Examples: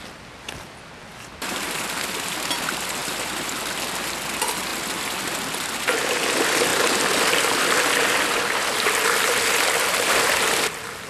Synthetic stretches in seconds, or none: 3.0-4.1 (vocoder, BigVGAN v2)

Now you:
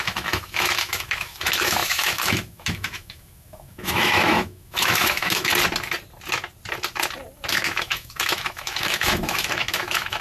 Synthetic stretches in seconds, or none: 0.0-5.5 (autoencoder, DAC-VAE); 7.5-10.2

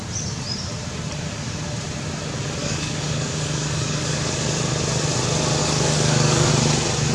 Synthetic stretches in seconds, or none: 2.6-4.6 (codec, DAC); 5.6-6.5

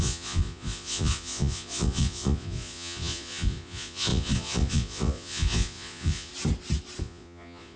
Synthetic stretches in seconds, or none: 0.0-6.3 (vocoder, Vocos); 7.0-7.8